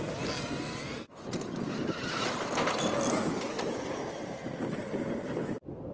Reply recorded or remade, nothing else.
recorded